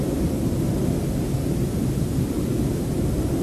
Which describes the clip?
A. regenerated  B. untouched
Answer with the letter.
B